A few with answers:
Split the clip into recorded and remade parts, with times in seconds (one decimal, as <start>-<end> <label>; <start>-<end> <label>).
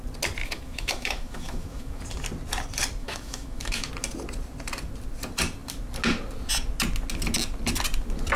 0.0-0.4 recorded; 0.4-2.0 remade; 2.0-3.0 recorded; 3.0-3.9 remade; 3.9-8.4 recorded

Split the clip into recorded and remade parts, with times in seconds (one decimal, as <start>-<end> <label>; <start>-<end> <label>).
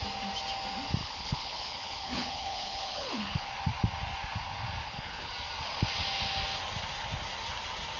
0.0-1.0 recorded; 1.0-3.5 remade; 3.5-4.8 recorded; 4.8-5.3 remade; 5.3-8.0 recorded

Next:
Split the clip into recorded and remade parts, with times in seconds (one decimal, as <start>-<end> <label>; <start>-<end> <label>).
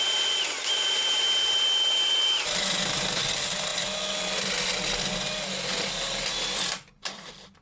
0.0-7.6 recorded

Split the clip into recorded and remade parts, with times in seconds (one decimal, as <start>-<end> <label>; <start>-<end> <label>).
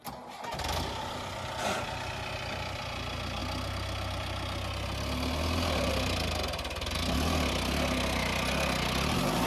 0.0-9.5 recorded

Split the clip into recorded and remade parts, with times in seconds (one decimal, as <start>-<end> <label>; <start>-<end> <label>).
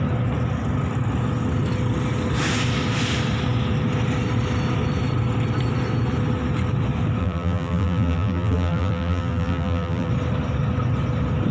0.0-7.2 recorded; 7.2-10.1 remade; 10.1-11.5 recorded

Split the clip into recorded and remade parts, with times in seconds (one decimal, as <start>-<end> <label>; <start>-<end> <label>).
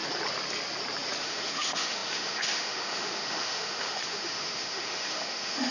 0.0-1.2 recorded; 1.2-5.7 remade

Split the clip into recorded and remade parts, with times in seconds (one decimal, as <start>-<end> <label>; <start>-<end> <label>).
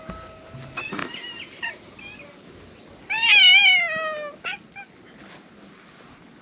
0.0-1.0 recorded; 1.0-1.9 remade; 1.9-6.4 recorded